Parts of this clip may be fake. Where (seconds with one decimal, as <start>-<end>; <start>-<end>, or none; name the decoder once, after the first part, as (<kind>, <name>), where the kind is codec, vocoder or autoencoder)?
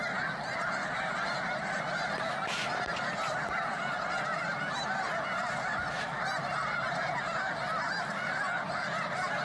none